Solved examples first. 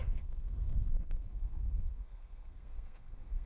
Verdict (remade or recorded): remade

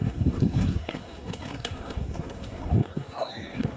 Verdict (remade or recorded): remade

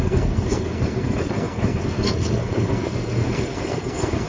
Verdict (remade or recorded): remade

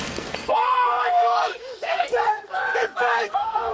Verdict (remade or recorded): remade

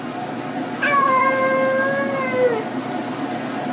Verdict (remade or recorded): recorded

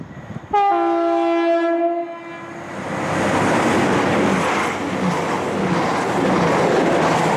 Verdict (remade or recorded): recorded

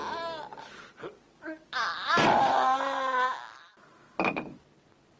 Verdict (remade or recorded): recorded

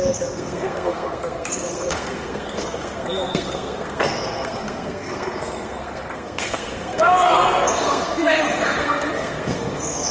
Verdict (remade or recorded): remade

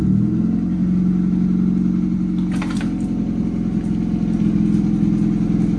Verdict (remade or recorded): recorded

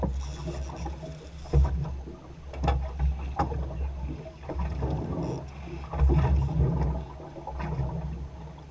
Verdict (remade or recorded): recorded